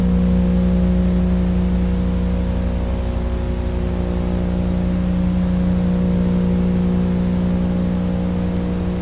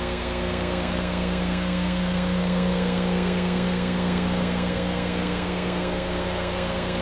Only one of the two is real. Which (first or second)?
first